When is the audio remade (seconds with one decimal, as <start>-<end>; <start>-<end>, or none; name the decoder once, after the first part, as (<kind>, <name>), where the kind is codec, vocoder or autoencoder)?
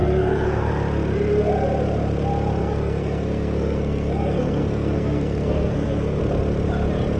0.0-0.7 (codec, SNAC); 2.6-6.2